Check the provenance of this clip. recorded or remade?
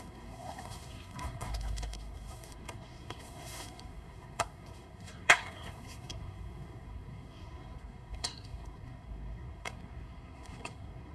remade